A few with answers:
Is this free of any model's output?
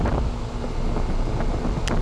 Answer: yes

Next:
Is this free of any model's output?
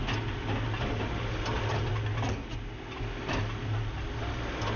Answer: yes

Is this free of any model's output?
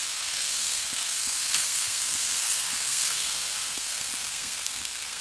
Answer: no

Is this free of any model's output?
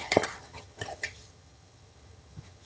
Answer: no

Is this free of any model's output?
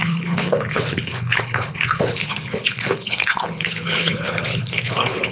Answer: no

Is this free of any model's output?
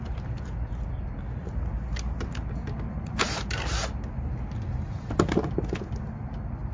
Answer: yes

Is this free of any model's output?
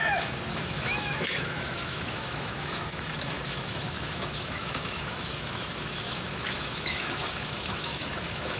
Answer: no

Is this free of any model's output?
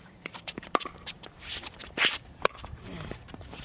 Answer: no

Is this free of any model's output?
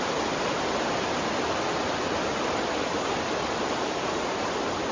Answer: yes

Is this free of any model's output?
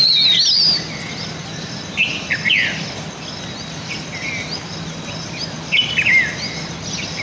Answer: yes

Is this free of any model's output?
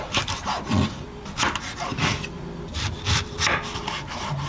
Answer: yes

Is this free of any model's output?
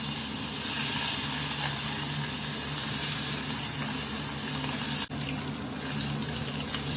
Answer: yes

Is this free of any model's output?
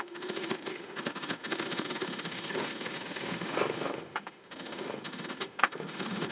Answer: no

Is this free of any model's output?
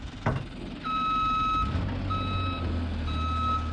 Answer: yes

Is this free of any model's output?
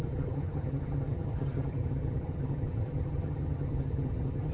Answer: no